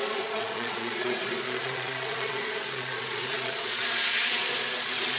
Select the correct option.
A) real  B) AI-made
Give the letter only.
B